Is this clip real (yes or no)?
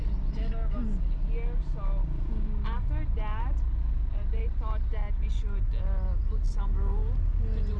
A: yes